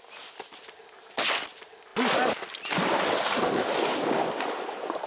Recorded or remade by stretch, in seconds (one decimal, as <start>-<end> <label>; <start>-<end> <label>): 0.0-5.1 recorded